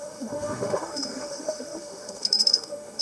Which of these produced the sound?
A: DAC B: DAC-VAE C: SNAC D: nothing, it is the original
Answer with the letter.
B